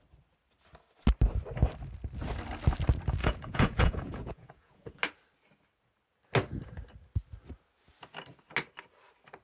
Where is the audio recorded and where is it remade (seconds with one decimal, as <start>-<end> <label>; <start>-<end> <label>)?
0.0-3.2 recorded; 3.2-5.0 remade; 5.0-9.4 recorded